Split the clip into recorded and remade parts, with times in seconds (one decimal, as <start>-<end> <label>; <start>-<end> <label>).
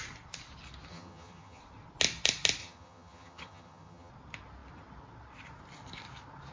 0.0-0.9 recorded; 0.9-1.6 remade; 1.6-2.6 recorded; 2.6-4.1 remade; 4.1-6.5 recorded